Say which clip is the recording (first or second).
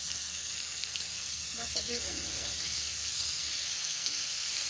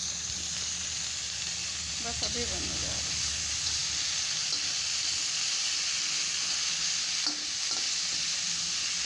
second